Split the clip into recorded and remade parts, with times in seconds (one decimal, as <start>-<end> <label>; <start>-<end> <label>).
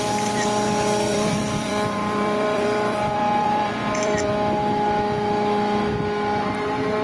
0.0-1.1 recorded; 1.1-4.3 remade; 4.3-7.0 recorded